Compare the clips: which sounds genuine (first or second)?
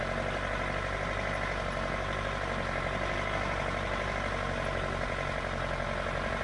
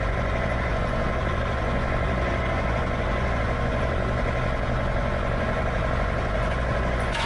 first